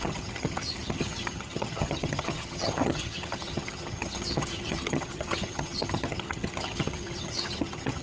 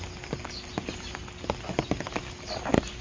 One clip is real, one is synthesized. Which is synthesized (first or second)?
first